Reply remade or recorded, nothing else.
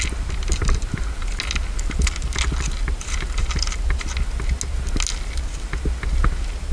recorded